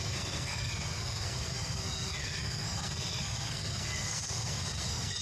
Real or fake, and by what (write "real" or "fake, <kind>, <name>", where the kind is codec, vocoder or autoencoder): fake, codec, SNAC